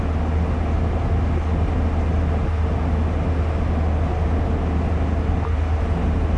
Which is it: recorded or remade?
recorded